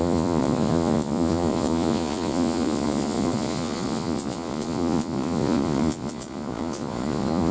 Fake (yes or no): yes